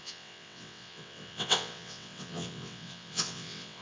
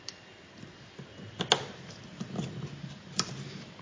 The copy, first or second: first